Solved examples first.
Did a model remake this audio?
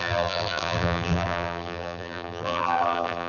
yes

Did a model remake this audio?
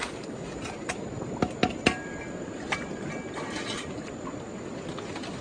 no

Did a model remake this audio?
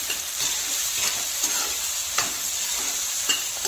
yes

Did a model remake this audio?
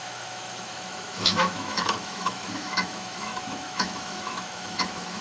yes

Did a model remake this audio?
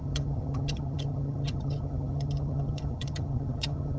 yes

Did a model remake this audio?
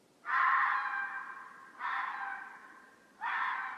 no